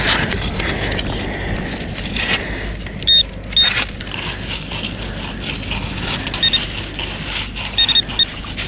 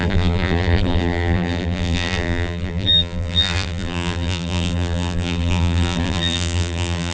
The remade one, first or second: second